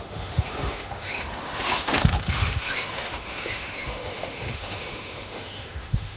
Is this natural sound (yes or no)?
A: no